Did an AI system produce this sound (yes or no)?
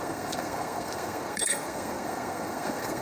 yes